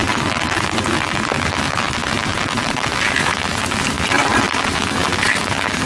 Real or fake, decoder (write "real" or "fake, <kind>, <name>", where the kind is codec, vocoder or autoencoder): real